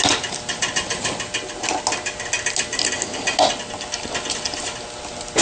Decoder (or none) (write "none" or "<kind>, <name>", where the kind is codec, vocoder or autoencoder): none